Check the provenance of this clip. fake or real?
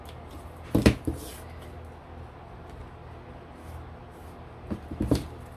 real